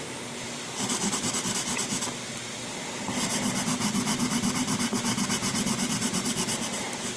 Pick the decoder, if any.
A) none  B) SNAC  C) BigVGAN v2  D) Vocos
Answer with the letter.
A